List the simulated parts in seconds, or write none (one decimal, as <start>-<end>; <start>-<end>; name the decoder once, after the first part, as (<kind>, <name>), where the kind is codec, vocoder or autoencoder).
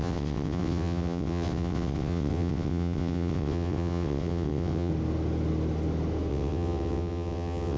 0.0-4.9 (vocoder, WaveNeXt); 6.3-7.8